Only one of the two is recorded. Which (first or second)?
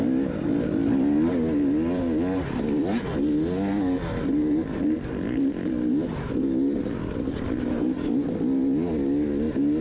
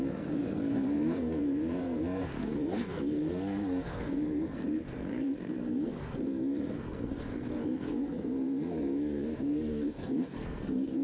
first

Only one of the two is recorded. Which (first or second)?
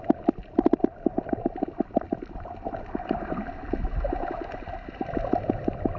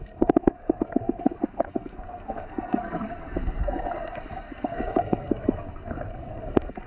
first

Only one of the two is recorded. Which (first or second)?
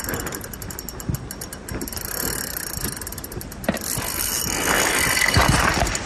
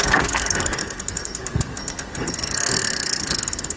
first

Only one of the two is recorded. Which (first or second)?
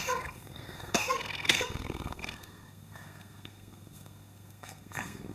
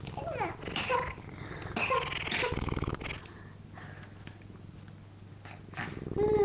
second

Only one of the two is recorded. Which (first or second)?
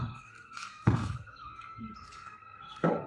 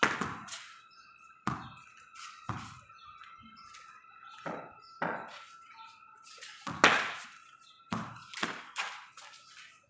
second